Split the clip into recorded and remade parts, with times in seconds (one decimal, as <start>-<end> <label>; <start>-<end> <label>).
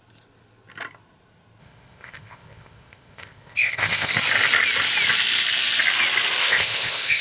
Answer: 0.0-1.6 recorded; 1.6-4.1 remade; 4.1-6.4 recorded; 6.4-7.2 remade